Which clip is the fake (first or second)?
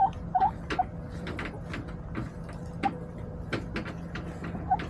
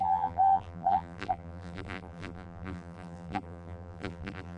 second